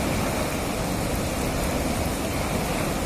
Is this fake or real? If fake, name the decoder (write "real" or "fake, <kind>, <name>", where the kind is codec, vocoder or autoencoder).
real